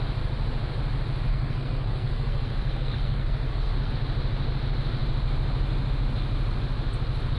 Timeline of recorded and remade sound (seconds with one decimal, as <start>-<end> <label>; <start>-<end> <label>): 0.0-1.3 recorded; 1.3-3.9 remade; 3.9-7.4 recorded